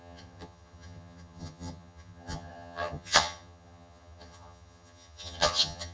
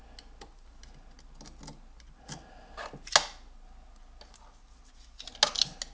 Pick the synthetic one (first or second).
first